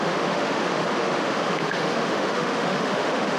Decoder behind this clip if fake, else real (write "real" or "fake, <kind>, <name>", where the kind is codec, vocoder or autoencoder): fake, autoencoder, DAC-VAE